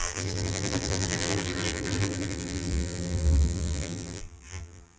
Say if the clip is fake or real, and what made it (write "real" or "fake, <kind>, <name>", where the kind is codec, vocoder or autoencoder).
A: fake, vocoder, BigVGAN v2